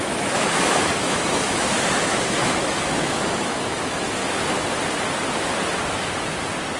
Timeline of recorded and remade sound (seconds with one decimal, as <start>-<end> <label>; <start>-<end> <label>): 0.0-4.2 remade; 4.2-6.8 recorded